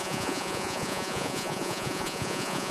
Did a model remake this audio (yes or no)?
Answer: yes